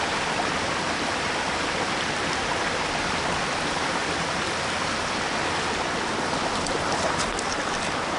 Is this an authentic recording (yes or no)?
yes